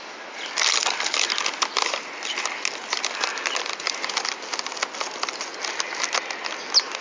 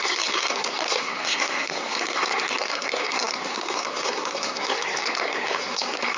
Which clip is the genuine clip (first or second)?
first